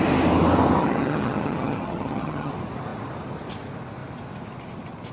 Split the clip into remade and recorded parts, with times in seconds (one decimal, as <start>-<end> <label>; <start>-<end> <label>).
0.0-0.8 recorded; 0.8-2.5 remade; 2.5-5.1 recorded